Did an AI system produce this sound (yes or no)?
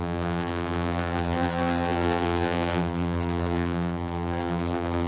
yes